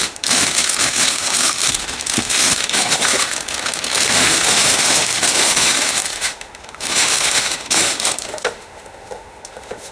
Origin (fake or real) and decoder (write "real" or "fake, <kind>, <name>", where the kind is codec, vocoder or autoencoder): fake, autoencoder, DAC-VAE